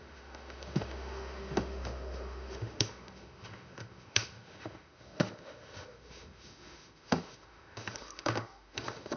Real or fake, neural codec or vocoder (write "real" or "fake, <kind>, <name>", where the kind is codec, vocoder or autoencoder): fake, autoencoder, DAC-VAE